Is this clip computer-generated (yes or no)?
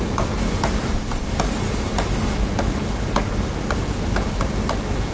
no